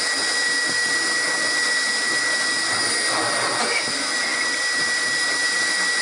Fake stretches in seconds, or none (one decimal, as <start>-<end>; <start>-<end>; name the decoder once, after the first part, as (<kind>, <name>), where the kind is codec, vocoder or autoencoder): none